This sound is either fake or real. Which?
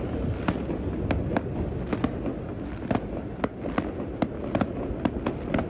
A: real